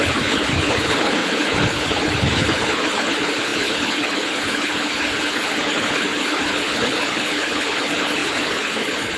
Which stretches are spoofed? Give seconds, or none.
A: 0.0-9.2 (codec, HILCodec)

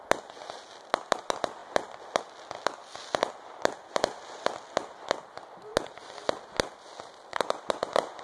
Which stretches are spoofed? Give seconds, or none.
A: none

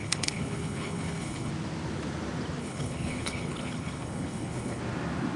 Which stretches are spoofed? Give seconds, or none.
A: 0.0-1.5 (codec, HILCodec); 2.6-4.8

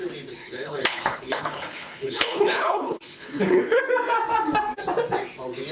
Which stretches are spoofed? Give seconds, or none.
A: 0.4-3.8 (codec, HILCodec)

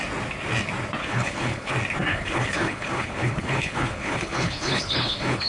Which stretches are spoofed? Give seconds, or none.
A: 1.0-1.7 (codec, HILCodec); 2.1-5.5

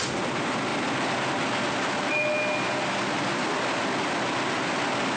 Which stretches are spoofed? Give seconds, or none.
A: none

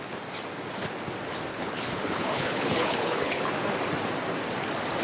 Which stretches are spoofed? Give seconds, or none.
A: 1.5-3.5 (codec, HILCodec)